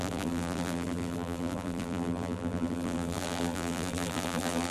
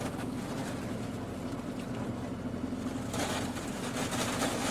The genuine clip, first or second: second